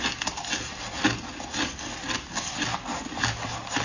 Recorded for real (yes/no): yes